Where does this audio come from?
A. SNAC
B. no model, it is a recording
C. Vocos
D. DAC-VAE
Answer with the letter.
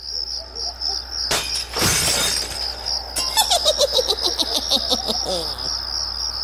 B